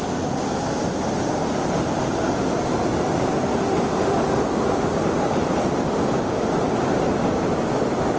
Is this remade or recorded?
recorded